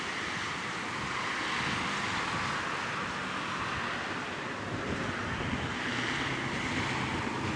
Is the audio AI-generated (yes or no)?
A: no